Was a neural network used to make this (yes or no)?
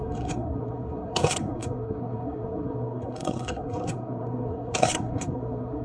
yes